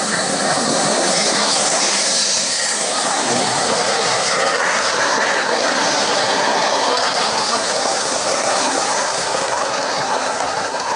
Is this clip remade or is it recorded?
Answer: remade